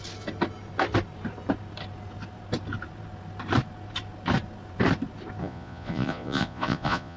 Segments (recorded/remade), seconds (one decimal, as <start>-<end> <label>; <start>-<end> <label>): 0.0-5.4 recorded; 5.4-7.2 remade